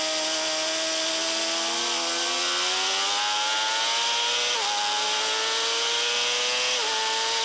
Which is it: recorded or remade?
recorded